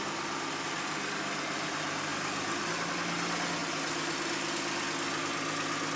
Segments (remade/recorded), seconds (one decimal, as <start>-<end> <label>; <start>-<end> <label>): 0.0-6.0 recorded